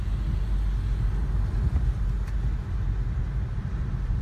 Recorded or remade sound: recorded